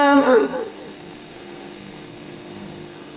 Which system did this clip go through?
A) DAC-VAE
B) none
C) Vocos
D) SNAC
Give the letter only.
D